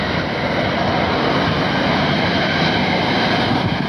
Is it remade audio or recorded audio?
recorded